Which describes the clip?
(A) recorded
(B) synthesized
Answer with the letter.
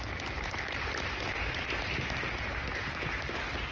B